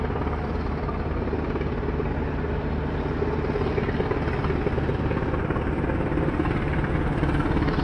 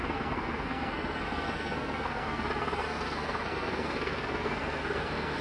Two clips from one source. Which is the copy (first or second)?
second